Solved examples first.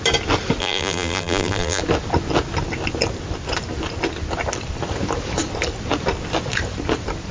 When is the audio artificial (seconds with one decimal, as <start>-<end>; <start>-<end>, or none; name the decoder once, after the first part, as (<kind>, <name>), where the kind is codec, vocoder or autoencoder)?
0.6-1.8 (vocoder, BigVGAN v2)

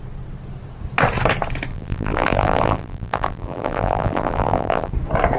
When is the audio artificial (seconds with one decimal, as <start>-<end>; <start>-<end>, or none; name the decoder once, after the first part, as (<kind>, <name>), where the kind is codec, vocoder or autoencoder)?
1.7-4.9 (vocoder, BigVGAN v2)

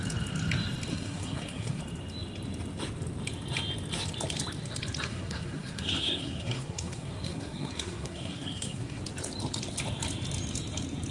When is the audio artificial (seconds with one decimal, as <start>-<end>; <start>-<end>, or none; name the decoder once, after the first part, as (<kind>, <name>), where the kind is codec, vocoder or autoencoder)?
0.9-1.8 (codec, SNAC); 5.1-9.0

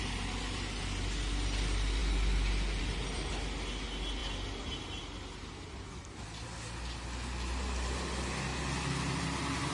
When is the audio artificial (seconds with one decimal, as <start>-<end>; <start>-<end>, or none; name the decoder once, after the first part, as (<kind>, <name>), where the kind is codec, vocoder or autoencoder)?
none

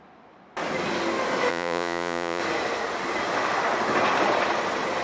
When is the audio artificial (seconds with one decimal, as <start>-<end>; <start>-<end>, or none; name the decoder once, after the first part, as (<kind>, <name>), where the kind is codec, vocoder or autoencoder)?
1.5-2.4 (vocoder, Vocos)

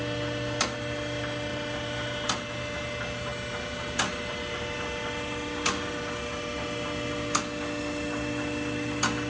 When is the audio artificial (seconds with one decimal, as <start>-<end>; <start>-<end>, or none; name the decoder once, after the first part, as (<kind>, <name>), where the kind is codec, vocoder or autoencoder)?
none

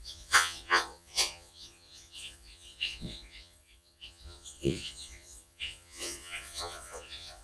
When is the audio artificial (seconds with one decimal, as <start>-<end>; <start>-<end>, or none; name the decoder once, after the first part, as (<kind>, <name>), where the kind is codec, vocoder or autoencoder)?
0.0-7.4 (vocoder, Vocos)